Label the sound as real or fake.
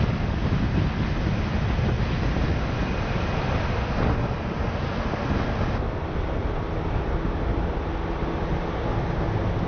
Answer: real